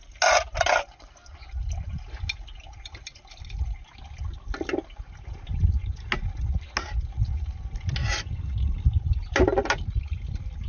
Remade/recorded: recorded